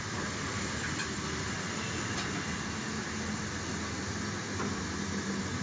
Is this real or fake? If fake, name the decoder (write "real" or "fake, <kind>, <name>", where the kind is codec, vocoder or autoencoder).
real